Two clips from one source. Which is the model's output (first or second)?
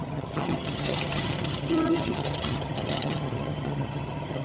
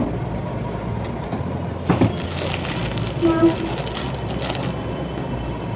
first